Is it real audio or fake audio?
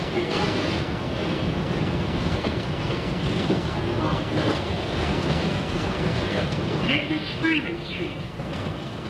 fake